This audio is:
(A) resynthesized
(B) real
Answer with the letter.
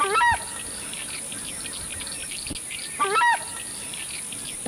B